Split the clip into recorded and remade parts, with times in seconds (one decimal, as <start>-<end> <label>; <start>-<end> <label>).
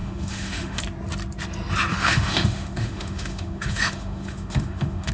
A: 0.0-0.8 remade; 0.8-1.9 recorded; 1.9-5.1 remade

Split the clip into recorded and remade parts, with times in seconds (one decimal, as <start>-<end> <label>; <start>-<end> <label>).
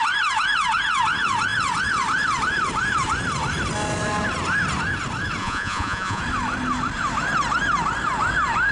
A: 0.0-5.4 recorded; 5.4-6.2 remade; 6.2-8.7 recorded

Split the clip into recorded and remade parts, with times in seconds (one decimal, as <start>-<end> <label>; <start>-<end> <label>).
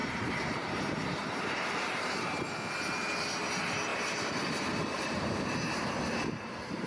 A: 0.0-2.4 remade; 2.4-3.9 recorded; 3.9-6.9 remade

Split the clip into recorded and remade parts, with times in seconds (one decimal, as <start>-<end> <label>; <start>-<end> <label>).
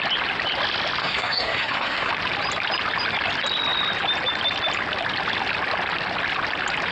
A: 0.0-1.0 recorded; 1.0-2.1 remade; 2.1-6.9 recorded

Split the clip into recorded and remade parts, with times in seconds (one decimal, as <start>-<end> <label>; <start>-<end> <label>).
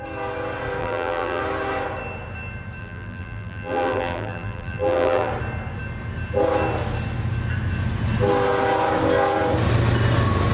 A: 0.0-0.8 recorded; 0.8-1.4 remade; 1.4-2.8 recorded; 2.8-5.3 remade; 5.3-10.5 recorded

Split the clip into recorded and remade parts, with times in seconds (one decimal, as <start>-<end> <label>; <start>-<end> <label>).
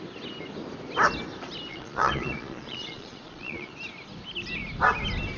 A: 0.0-1.7 recorded; 1.7-3.7 remade; 3.7-5.4 recorded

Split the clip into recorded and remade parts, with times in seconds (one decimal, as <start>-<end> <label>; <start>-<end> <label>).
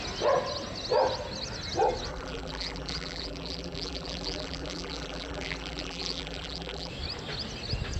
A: 0.0-2.1 recorded; 2.1-6.9 remade; 6.9-8.0 recorded